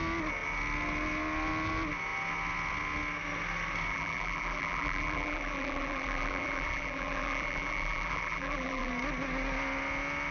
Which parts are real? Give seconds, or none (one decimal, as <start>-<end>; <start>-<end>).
0.0-3.9; 8.9-10.3